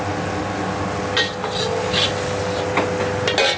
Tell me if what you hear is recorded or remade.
recorded